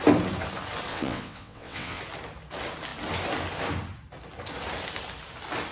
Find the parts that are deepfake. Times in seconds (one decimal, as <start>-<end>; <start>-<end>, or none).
0.9-2.0